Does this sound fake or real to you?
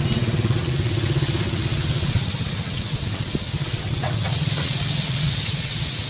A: fake